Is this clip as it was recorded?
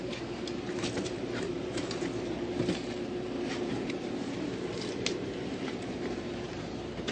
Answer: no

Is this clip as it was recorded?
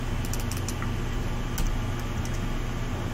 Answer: yes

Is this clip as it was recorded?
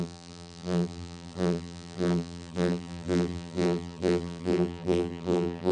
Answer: no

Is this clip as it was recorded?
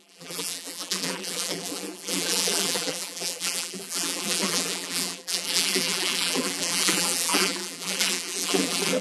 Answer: no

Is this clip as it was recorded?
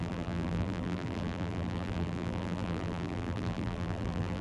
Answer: no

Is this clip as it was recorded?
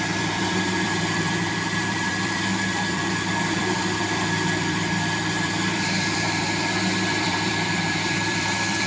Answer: no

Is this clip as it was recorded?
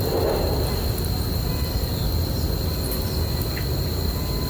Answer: yes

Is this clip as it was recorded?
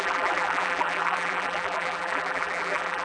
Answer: no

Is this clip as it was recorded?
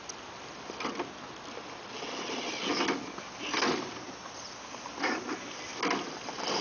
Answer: yes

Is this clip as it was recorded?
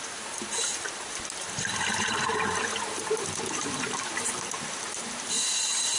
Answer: no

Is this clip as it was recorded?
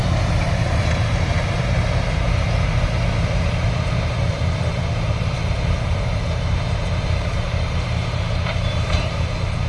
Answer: no